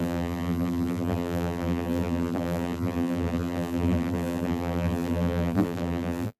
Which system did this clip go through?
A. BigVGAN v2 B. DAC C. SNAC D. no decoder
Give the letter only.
A